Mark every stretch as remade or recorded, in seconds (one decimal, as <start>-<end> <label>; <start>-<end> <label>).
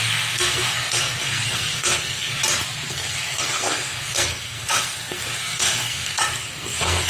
0.0-2.4 remade; 2.4-2.9 recorded; 2.9-7.1 remade